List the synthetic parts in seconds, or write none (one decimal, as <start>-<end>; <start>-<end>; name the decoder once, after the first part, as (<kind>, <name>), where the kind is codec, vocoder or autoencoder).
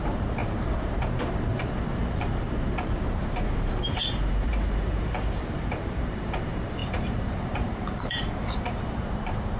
0.0-9.6 (vocoder, BigVGAN v2)